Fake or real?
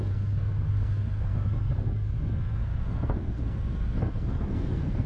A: fake